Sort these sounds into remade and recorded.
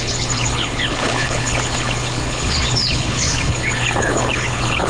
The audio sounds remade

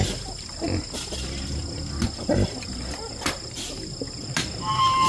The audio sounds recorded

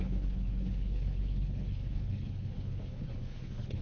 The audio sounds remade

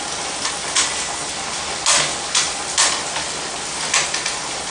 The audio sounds recorded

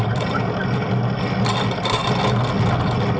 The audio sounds recorded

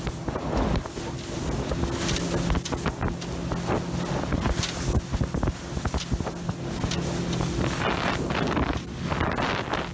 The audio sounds recorded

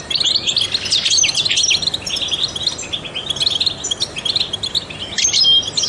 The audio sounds recorded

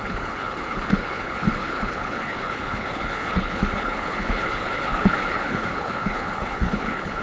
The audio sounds remade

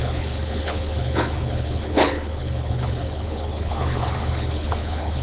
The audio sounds remade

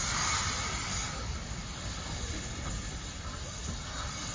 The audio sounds recorded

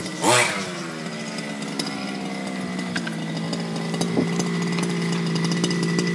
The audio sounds recorded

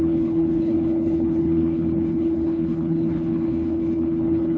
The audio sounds remade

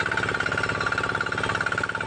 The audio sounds recorded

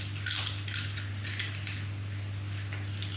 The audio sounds recorded